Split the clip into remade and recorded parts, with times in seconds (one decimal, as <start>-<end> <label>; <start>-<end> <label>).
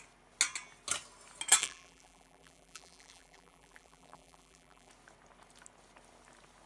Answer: 0.0-1.6 recorded; 1.6-4.9 remade; 4.9-6.7 recorded